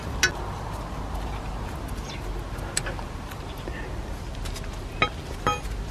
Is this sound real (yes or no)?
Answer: yes